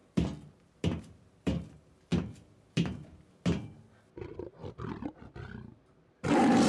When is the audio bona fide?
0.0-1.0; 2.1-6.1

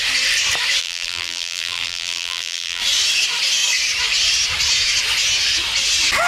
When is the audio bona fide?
0.0-0.8; 2.8-6.3